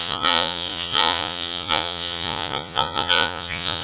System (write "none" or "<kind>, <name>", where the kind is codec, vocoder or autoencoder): vocoder, Vocos